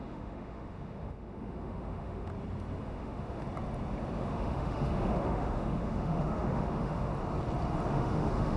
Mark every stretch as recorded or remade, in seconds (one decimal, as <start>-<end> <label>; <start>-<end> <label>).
0.0-2.3 remade; 2.3-2.8 recorded; 2.8-3.4 remade; 3.4-4.2 recorded; 4.2-7.1 remade; 7.1-7.9 recorded; 7.9-8.6 remade